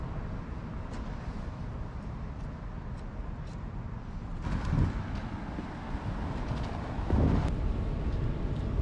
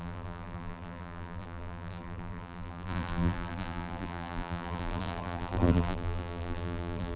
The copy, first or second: second